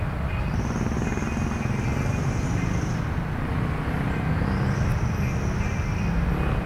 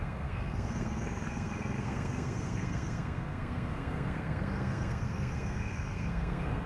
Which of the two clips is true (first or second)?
first